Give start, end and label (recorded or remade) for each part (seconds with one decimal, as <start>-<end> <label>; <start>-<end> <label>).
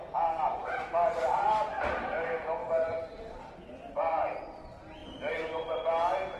0.0-2.6 recorded; 2.6-4.4 remade; 4.4-6.4 recorded